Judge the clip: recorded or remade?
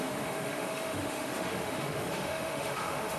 remade